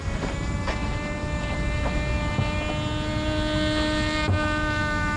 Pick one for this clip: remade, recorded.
recorded